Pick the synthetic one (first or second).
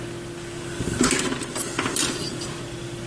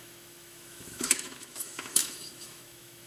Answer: second